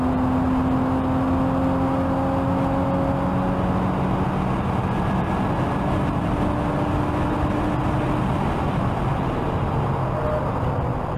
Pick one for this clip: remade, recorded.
recorded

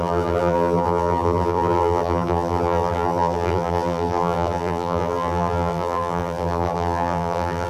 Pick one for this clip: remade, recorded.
remade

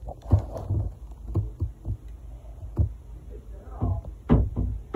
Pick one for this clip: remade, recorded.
recorded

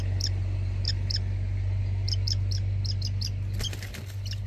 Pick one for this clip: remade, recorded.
recorded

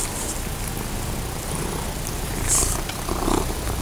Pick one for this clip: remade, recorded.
recorded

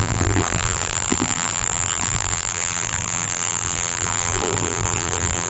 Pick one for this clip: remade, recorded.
remade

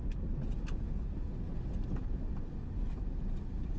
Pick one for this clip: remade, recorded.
recorded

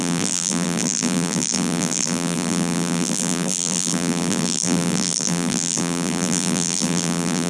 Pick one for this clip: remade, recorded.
remade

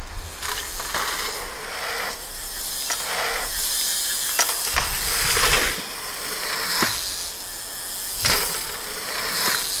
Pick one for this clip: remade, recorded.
recorded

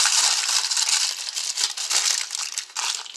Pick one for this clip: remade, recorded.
recorded